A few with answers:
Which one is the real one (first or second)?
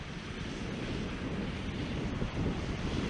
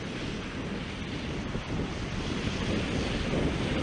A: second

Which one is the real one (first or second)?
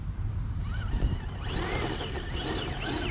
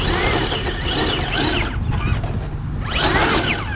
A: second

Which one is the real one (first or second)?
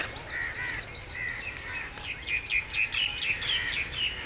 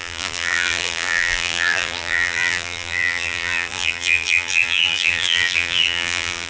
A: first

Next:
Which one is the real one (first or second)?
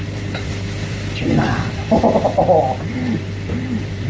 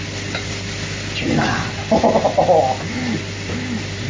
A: second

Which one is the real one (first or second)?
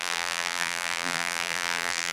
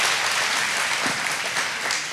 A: second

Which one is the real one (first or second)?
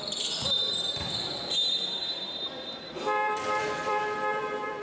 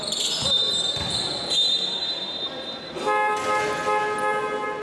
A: second